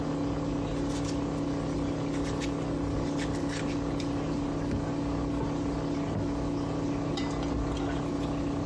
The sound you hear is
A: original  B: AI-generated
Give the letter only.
A